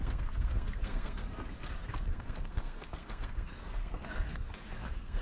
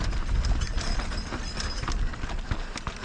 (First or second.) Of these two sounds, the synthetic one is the first